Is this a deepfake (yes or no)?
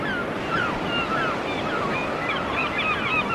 no